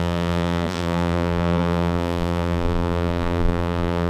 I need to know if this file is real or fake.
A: fake